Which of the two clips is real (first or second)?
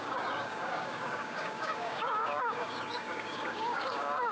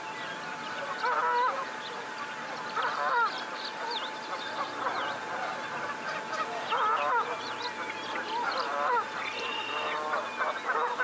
second